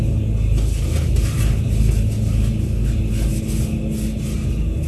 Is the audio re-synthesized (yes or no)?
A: no